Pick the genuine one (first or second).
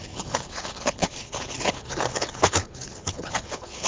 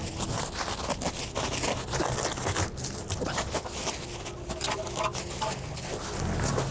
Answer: second